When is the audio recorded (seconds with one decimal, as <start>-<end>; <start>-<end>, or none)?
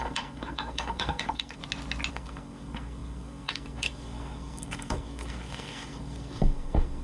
1.6-2.1